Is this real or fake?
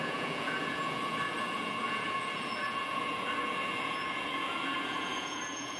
fake